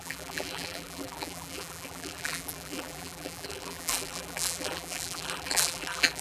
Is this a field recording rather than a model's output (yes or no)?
no